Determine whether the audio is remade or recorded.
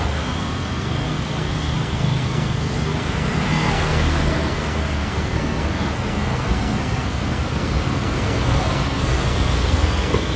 remade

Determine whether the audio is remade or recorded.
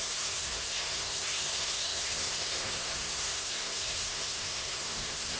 remade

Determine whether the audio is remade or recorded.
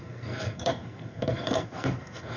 remade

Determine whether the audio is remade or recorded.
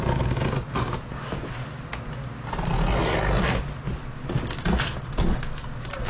recorded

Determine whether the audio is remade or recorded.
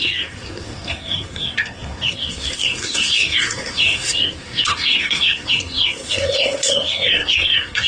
remade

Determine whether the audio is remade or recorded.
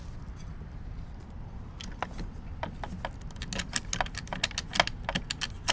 recorded